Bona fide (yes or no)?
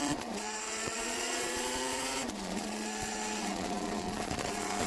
no